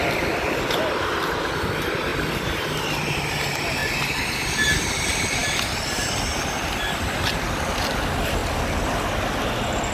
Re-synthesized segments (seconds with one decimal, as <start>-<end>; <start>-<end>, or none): none